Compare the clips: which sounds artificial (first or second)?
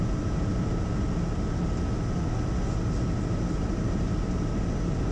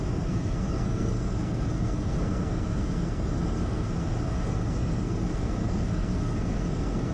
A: second